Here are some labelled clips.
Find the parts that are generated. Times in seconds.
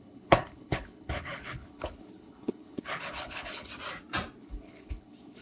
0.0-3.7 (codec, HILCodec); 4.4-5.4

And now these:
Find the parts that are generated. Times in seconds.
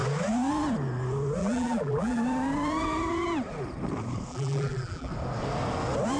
1.4-2.2 (vocoder, BigVGAN v2); 4.3-5.1